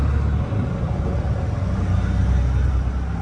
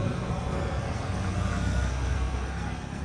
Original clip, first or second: first